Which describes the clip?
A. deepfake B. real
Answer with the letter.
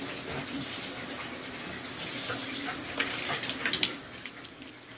B